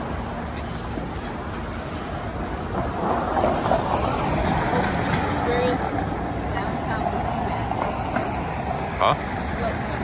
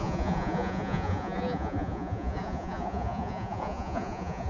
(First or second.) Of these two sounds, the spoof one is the second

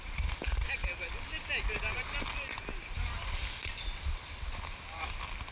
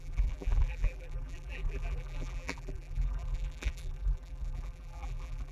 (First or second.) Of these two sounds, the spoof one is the second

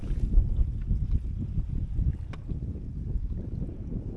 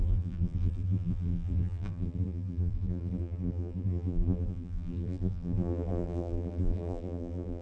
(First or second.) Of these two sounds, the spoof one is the second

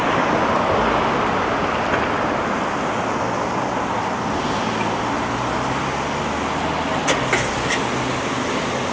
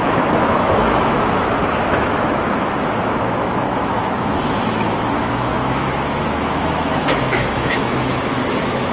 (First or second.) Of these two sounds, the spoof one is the second